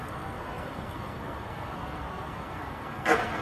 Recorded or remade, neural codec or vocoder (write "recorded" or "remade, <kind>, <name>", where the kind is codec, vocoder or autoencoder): remade, codec, SNAC